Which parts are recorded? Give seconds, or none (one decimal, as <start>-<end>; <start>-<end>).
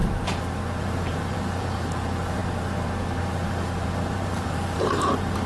0.0-0.8; 2.4-3.2